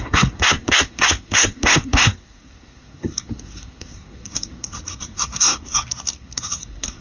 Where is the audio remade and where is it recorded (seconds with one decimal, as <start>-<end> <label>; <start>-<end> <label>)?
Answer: 0.0-7.0 remade